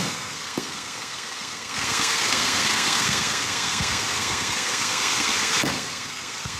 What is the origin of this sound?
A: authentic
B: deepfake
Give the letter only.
B